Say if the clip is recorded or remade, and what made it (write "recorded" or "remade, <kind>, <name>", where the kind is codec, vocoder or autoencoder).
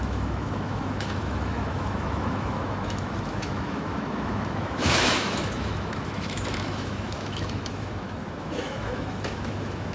remade, autoencoder, DAC-VAE